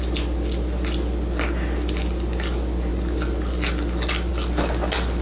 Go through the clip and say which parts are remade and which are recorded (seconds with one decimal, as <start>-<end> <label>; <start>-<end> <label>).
0.0-5.2 recorded